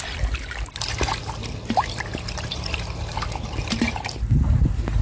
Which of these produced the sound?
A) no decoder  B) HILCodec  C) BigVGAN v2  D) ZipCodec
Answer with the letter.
A